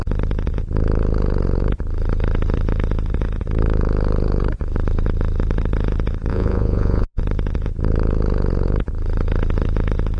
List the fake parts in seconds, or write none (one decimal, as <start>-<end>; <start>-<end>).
6.3-7.2